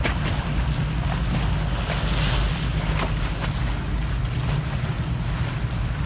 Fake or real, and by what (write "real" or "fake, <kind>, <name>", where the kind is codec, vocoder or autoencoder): real